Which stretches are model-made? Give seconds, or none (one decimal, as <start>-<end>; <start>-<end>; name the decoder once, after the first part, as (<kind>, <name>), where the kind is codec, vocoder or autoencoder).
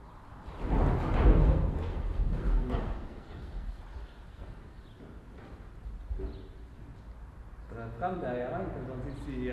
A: 1.3-3.8 (codec, SNAC); 4.3-4.8